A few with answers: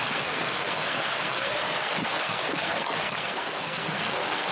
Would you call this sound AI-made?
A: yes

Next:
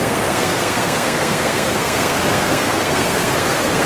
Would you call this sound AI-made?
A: yes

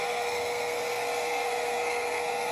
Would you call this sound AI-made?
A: yes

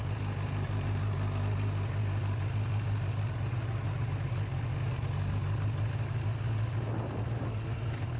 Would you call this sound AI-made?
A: no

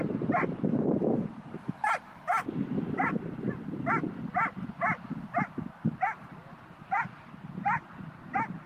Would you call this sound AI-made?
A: no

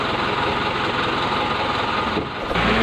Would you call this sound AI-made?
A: no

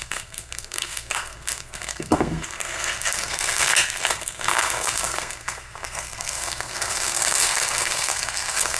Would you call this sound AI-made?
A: yes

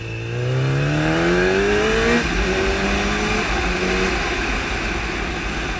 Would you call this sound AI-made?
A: no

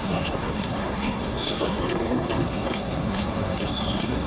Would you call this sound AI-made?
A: yes